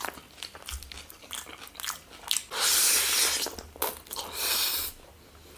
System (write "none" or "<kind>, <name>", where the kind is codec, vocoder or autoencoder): none